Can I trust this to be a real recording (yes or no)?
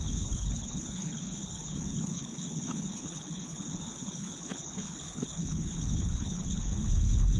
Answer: no